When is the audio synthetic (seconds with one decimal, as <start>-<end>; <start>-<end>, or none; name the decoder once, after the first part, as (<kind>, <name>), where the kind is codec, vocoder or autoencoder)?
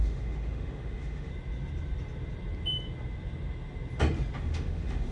0.0-1.3 (autoencoder, DAC-VAE); 4.4-5.1